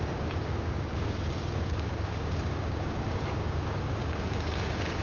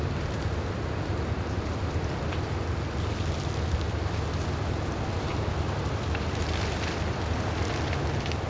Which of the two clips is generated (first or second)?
first